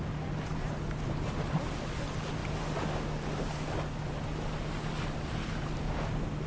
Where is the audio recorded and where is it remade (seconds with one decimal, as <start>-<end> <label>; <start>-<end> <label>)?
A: 0.0-6.5 recorded